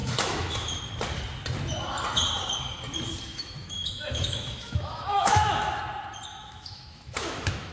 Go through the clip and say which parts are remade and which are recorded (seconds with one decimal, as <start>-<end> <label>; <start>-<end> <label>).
0.0-0.8 remade; 0.8-3.3 recorded; 3.3-5.8 remade; 5.8-6.3 recorded; 6.3-7.7 remade